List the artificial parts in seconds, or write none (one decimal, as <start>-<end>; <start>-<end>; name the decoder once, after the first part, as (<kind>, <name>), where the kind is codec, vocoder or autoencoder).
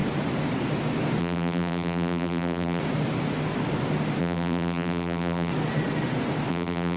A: 1.2-2.8 (vocoder, BigVGAN v2); 4.2-5.5; 6.5-7.0